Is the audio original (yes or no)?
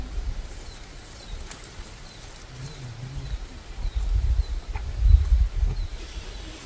yes